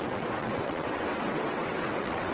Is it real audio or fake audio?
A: fake